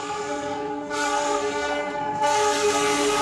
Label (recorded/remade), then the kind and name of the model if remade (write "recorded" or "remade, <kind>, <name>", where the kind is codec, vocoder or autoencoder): remade, codec, SNAC